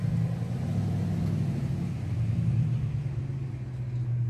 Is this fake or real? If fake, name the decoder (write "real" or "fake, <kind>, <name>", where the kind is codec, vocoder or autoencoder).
real